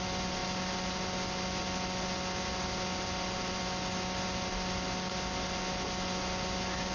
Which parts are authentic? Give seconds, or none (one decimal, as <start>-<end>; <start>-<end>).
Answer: 0.0-6.9